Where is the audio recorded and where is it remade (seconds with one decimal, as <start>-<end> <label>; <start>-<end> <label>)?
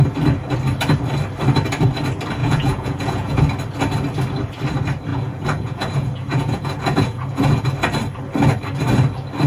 0.0-2.4 recorded; 2.4-3.4 remade; 3.4-5.1 recorded; 5.1-7.7 remade; 7.7-9.5 recorded